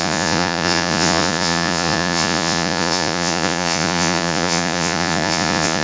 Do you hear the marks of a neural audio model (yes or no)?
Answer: yes